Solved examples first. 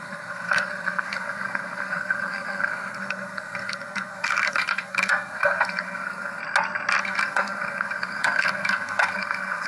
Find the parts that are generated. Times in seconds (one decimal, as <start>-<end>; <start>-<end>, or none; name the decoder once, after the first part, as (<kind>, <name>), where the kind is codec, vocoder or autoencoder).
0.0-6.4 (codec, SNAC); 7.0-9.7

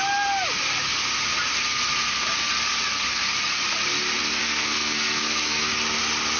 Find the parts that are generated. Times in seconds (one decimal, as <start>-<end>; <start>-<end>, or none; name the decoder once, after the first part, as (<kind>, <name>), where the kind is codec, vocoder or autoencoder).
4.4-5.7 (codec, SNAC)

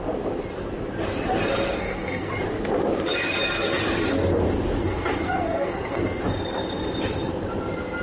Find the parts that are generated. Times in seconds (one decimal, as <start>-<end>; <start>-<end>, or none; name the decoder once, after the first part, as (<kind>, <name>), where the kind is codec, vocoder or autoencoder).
1.7-2.3 (codec, SNAC); 4.8-6.2

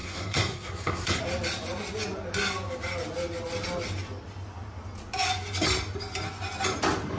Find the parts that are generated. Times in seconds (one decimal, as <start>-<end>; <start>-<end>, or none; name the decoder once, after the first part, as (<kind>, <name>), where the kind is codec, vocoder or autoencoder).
0.0-1.2 (codec, SNAC)

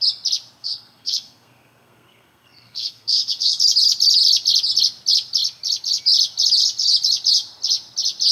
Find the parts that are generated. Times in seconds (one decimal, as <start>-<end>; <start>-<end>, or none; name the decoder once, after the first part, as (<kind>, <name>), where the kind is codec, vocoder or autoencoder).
0.6-3.6 (codec, SNAC)